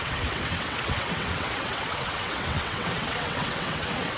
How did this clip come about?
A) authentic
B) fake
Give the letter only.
B